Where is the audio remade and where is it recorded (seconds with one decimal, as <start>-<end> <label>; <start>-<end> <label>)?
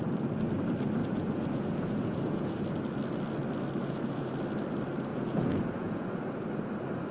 0.0-1.0 recorded; 1.0-2.6 remade; 2.6-3.8 recorded; 3.8-4.3 remade; 4.3-5.1 recorded; 5.1-6.2 remade; 6.2-7.1 recorded